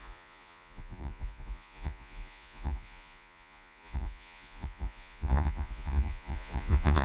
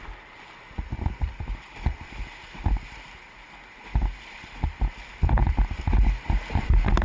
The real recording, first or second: second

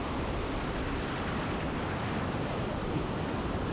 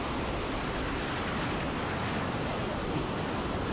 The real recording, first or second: second